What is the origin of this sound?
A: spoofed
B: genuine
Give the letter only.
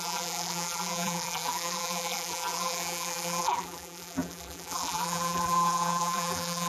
A